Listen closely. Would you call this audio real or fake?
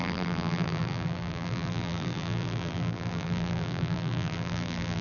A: fake